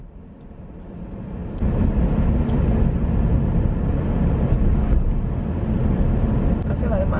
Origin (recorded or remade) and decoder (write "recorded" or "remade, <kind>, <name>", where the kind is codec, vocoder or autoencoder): recorded